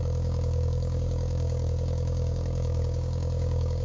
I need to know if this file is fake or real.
fake